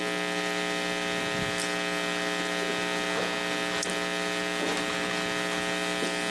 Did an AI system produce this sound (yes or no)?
no